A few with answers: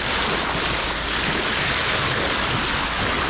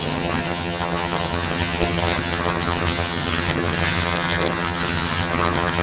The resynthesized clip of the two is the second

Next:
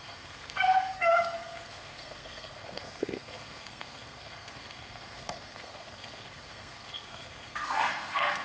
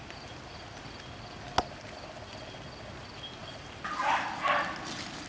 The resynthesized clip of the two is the first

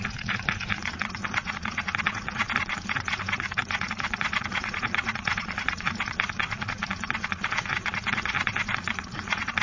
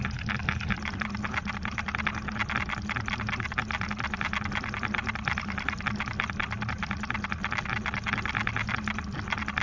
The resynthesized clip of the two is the first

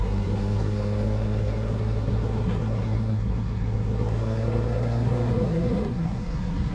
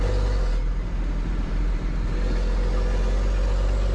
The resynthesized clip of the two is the first